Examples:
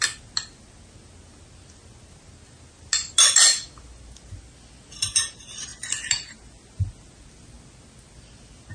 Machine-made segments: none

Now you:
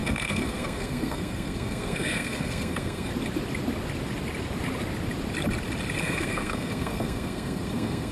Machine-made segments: 0.0-3.1 (codec, SNAC); 6.0-8.1

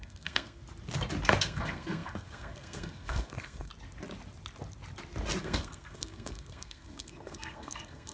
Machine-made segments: 0.0-0.6 (codec, SNAC); 1.4-3.7; 5.4-8.1

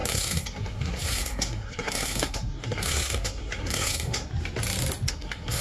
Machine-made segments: 0.0-4.3 (codec, SNAC); 5.1-5.6

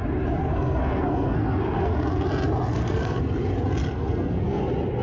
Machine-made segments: 0.4-1.9 (codec, SNAC); 2.7-3.2; 3.8-4.6

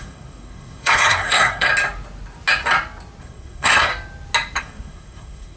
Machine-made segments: 0.0-1.7 (codec, SNAC); 3.2-3.9; 4.6-5.6